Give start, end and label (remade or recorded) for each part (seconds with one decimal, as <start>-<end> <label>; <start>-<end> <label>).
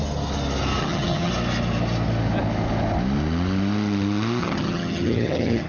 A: 0.0-0.8 recorded; 0.8-1.3 remade; 1.3-4.4 recorded; 4.4-5.7 remade